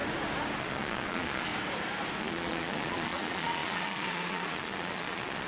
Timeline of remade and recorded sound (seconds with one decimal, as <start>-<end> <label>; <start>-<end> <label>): 0.0-0.6 recorded; 0.6-1.5 remade; 1.5-2.2 recorded; 2.2-5.5 remade